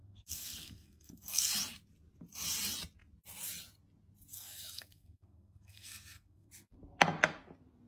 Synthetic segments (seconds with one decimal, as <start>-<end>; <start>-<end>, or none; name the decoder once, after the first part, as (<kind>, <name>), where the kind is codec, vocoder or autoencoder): 0.0-1.5 (codec, SNAC); 4.3-6.5